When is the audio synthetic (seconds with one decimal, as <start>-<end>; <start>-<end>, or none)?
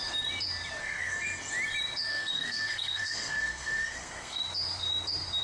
0.8-1.4; 2.1-4.4